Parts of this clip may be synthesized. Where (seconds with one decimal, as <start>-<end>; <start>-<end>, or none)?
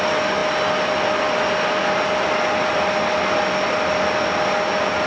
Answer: none